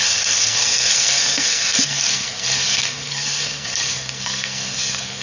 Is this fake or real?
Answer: fake